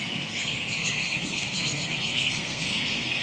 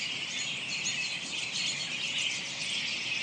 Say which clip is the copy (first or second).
first